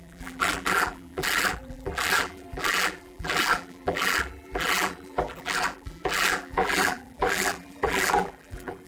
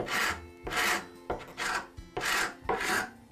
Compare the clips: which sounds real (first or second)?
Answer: second